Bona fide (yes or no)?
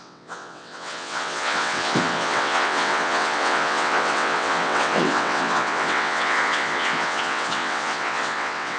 no